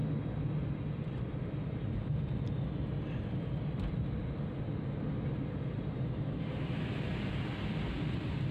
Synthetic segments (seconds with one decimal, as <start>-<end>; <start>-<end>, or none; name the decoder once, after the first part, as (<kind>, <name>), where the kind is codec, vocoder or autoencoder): none